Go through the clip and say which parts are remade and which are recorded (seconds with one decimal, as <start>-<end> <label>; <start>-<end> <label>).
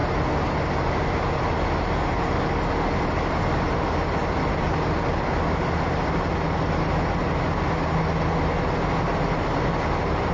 0.0-10.3 recorded